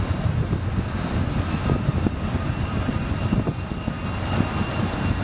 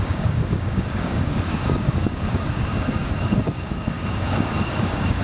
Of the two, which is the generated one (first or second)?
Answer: second